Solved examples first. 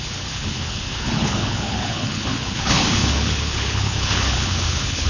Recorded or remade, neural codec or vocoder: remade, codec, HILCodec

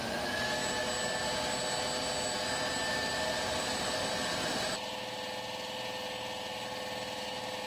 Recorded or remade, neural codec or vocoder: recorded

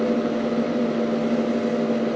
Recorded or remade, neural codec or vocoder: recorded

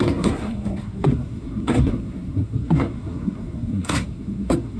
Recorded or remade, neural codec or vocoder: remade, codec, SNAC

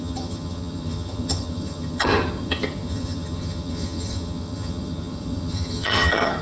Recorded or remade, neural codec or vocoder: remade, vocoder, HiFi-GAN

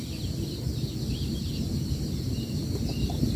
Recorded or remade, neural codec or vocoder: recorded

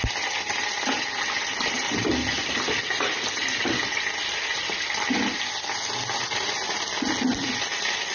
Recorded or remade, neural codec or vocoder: recorded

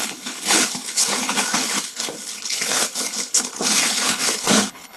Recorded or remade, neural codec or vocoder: remade, codec, HILCodec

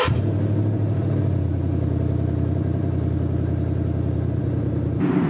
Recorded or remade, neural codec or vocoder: remade, vocoder, BigVGAN v2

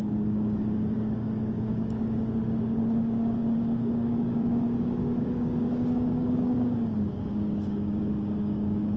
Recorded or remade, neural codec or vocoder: remade, codec, DAC